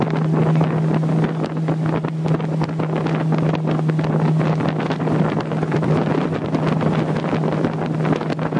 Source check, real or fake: real